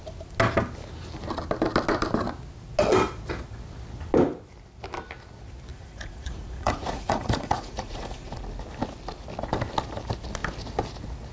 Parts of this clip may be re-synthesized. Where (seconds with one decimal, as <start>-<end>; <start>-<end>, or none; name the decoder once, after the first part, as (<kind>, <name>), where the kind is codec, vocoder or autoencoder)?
5.7-8.4 (vocoder, Vocos)